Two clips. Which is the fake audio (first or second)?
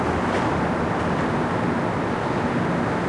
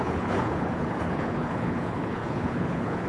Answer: second